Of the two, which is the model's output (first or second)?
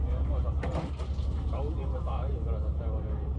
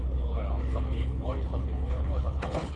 second